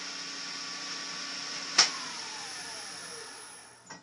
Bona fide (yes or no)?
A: yes